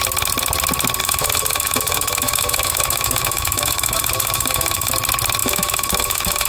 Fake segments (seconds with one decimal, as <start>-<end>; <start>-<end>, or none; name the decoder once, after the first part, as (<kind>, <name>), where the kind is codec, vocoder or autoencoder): 1.0-4.9 (autoencoder, DAC-VAE); 5.4-6.5